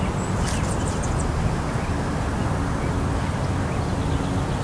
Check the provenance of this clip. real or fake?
real